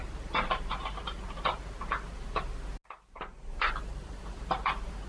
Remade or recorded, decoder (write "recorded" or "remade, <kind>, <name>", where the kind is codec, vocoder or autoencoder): recorded